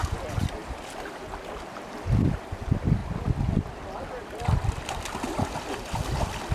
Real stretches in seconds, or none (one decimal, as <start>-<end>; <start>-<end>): 0.0-6.5